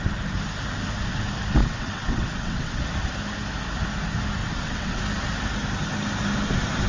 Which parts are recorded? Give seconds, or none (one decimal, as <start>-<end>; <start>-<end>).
0.0-1.6; 2.8-4.4; 5.0-6.9